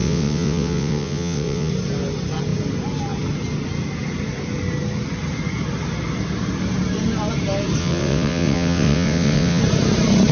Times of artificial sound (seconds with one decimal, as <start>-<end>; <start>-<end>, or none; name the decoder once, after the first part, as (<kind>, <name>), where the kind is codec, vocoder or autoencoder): 0.0-1.7 (vocoder, WaveNeXt); 7.8-9.6